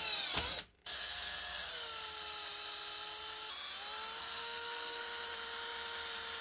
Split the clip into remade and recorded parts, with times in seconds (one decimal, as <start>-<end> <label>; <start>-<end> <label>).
0.0-0.9 recorded; 0.9-1.7 remade; 1.7-4.2 recorded; 4.2-5.0 remade; 5.0-6.4 recorded